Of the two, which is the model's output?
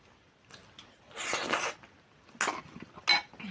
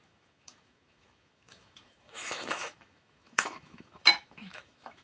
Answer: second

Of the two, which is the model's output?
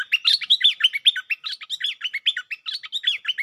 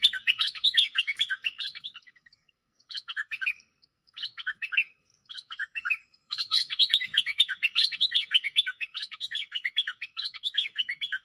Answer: second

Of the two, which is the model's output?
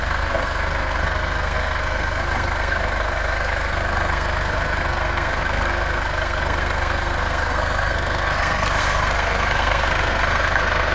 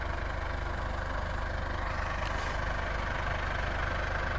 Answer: first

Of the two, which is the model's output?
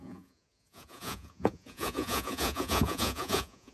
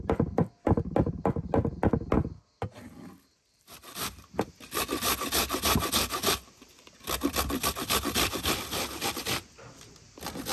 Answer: first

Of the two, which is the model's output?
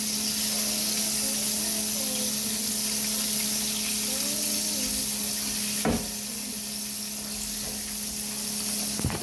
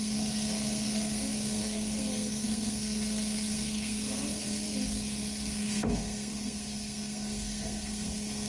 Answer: second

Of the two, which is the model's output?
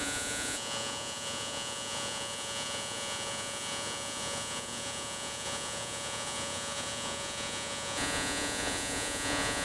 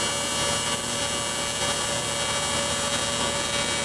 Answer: first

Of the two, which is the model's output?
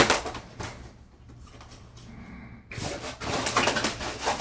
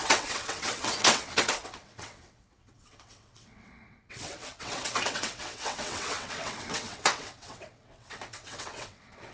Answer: second